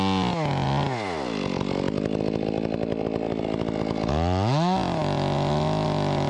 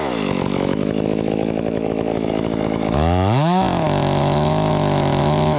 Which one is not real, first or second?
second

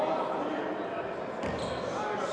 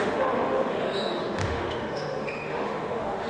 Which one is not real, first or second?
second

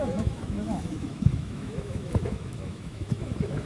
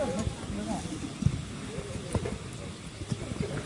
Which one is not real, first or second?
first